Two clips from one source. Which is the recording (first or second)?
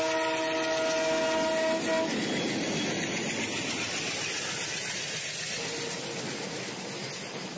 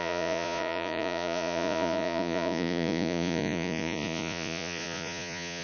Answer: first